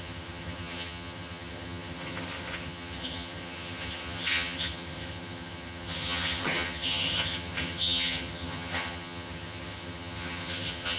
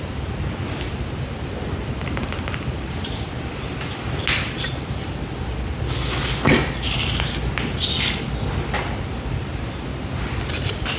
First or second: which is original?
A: second